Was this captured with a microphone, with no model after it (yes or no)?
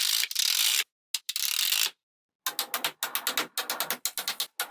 yes